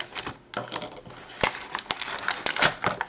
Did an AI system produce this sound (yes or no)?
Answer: no